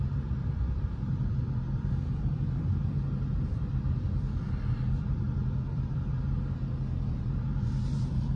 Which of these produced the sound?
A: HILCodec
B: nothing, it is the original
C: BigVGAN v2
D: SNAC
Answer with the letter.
C